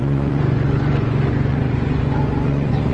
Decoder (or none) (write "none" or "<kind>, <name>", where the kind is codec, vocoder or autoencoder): vocoder, Vocos